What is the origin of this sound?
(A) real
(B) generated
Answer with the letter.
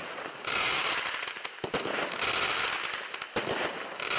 A